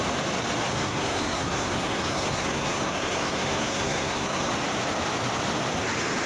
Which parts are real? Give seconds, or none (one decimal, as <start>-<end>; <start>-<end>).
0.0-0.7; 4.5-6.3